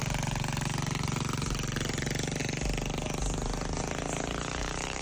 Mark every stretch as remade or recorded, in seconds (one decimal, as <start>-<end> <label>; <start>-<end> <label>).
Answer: 0.0-2.4 recorded; 2.4-3.8 remade; 3.8-5.0 recorded